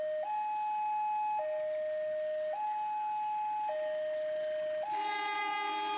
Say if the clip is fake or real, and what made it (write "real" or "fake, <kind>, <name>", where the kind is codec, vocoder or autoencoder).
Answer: real